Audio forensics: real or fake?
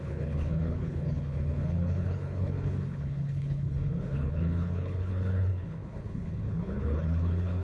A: fake